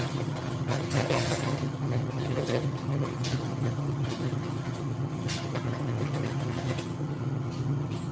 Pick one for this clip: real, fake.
fake